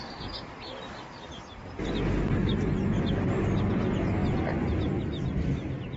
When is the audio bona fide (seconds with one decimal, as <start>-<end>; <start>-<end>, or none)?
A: 0.0-6.0